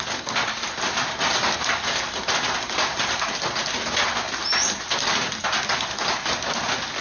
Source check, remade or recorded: recorded